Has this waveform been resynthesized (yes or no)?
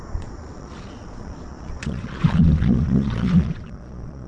yes